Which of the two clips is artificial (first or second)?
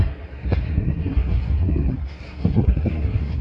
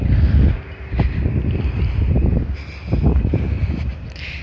first